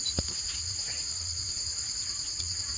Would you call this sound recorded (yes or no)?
no